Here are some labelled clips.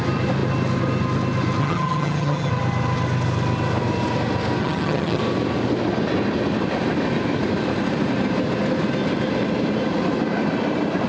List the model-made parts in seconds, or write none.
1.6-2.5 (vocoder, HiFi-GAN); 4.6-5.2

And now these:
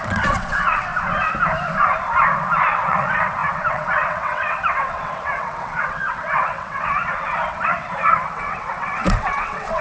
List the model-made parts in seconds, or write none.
0.0-0.9 (vocoder, WaveNeXt); 2.6-9.8

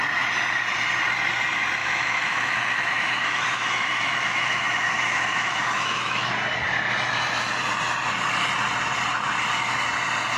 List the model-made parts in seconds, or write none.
1.8-6.3 (autoencoder, DAC-VAE)

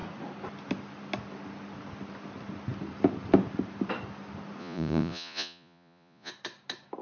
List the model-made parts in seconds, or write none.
4.6-6.3 (vocoder, Vocos)

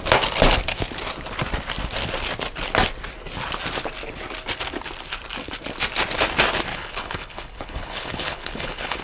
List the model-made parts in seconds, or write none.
6.7-9.0 (codec, HILCodec)

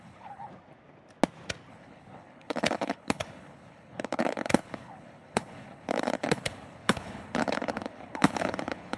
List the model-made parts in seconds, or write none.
0.0-0.5 (codec, HILCodec); 1.7-9.0